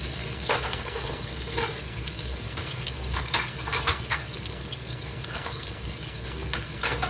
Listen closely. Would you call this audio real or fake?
fake